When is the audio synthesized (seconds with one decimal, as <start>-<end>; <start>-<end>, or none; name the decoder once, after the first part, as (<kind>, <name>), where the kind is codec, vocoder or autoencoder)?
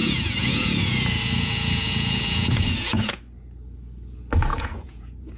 0.0-3.2 (vocoder, Vocos); 4.5-5.4